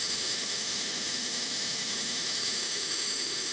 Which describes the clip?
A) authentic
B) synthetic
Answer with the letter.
B